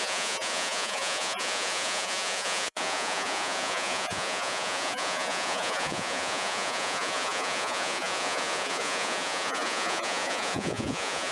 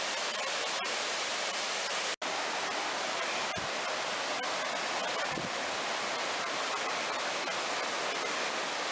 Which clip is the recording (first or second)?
second